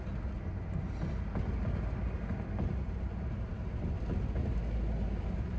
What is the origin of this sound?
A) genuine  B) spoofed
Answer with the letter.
A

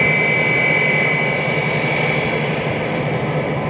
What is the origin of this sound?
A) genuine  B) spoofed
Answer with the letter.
A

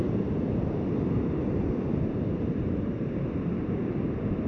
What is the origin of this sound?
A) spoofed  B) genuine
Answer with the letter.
B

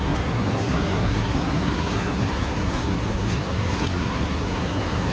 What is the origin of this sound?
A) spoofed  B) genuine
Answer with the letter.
A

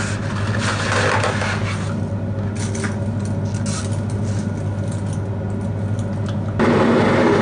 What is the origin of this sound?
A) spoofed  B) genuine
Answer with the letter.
B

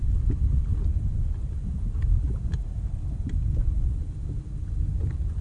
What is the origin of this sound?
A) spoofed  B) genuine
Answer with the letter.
B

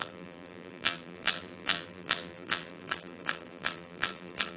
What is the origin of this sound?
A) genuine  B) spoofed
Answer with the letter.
B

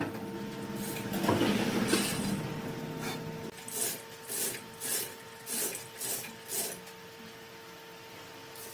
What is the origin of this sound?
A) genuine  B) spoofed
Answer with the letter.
A